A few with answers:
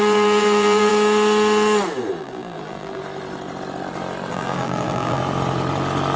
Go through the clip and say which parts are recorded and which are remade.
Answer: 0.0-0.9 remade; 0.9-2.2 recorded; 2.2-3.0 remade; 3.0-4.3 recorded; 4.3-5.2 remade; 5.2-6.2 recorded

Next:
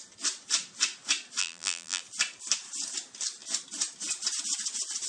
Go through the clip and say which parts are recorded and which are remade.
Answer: 0.0-1.4 recorded; 1.4-2.0 remade; 2.0-5.1 recorded